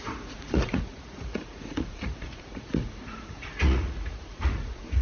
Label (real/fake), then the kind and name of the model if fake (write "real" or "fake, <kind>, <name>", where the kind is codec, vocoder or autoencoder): fake, vocoder, Vocos